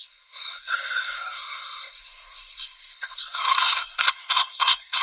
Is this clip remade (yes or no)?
yes